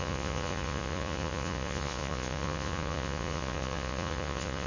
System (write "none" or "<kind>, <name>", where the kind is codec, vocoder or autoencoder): vocoder, Vocos